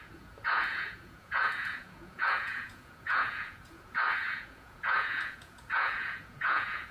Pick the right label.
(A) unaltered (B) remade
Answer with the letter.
B